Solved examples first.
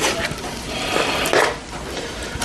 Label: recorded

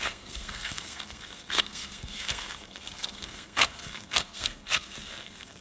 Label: remade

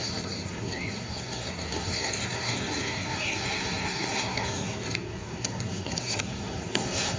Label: remade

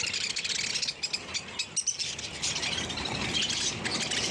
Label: recorded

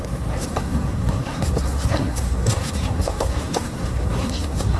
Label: remade